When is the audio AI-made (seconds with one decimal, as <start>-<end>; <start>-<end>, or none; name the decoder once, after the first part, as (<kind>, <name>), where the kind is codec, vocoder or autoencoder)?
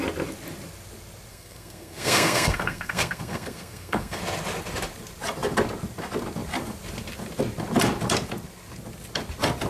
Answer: 1.3-4.2 (codec, SNAC)